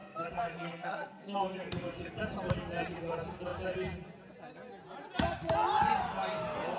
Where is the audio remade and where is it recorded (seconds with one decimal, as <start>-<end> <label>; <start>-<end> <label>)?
0.0-2.2 remade; 2.2-6.8 recorded